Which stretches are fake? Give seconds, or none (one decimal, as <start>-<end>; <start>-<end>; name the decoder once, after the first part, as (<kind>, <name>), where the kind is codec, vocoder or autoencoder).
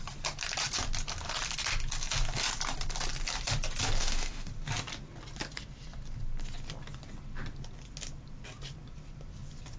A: 4.0-4.5 (autoencoder, DAC-VAE)